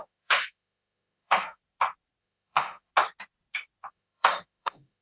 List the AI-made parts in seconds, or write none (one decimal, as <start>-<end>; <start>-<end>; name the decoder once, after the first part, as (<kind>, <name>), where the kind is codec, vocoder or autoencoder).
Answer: 0.0-1.6 (autoencoder, DAC-VAE); 2.2-2.9; 3.9-5.0